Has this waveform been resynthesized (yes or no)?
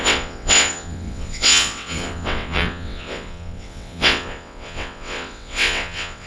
yes